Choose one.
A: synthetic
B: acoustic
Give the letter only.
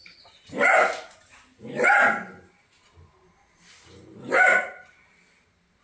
B